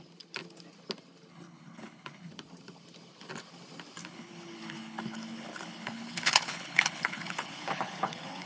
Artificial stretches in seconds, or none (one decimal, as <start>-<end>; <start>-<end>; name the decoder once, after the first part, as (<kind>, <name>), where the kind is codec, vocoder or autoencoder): 1.3-2.3 (codec, HILCodec); 4.0-8.5